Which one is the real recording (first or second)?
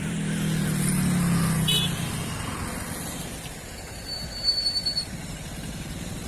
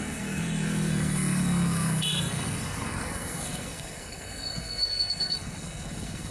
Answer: first